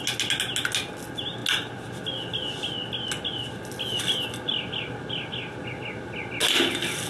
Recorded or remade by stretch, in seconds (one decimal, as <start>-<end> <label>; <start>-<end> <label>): 0.0-7.1 recorded